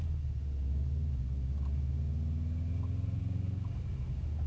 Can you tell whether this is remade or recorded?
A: recorded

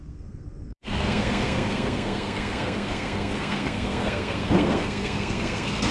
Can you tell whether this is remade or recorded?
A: remade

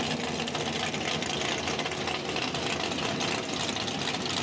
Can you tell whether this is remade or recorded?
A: recorded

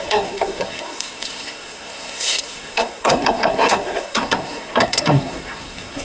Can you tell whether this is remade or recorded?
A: remade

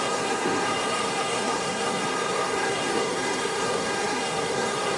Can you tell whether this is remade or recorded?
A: remade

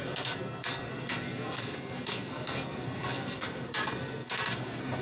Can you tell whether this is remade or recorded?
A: remade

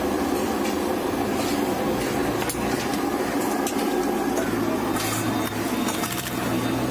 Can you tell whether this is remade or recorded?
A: recorded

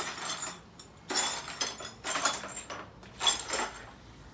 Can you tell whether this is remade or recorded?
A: recorded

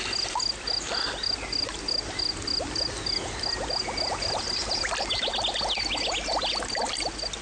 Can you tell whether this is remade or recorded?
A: recorded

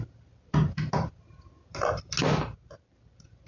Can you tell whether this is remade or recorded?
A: recorded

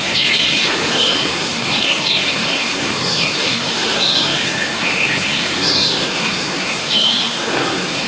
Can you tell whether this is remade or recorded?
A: remade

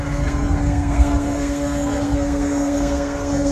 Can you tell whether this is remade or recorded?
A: remade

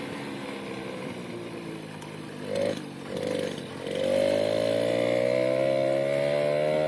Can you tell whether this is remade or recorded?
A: recorded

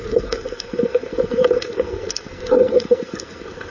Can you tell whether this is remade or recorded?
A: remade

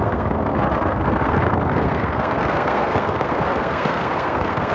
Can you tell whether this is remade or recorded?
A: remade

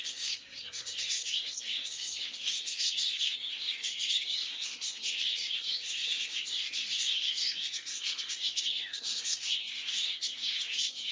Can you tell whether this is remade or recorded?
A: remade